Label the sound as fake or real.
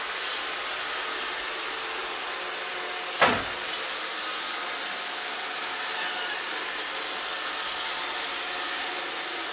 real